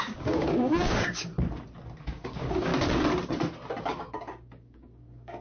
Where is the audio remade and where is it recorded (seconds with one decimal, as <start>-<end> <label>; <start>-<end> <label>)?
0.0-1.3 remade; 1.3-2.0 recorded; 2.0-2.7 remade; 2.7-3.8 recorded; 3.8-5.4 remade